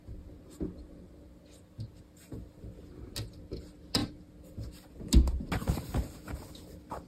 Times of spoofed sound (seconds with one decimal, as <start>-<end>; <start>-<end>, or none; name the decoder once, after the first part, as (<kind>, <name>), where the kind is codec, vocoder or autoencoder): none